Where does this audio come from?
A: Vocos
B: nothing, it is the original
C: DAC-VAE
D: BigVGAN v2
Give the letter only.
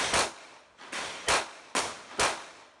B